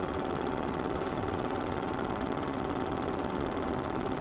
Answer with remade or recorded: remade